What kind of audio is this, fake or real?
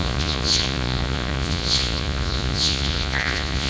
fake